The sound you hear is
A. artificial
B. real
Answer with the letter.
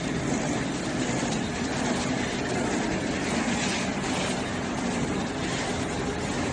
B